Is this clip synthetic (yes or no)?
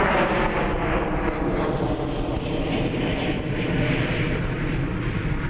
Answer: no